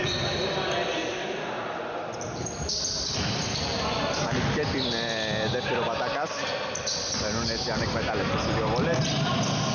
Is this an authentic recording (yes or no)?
yes